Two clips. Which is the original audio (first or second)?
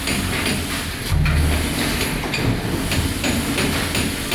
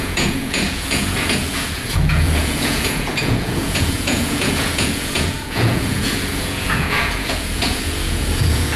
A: first